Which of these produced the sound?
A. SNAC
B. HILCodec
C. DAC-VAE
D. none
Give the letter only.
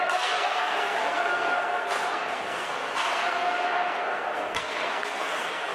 A